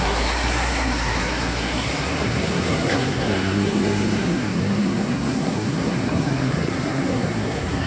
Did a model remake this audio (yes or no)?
yes